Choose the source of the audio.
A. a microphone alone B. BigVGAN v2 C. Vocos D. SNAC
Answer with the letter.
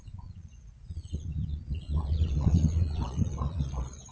C